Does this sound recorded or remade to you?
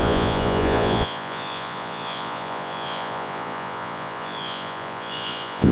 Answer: remade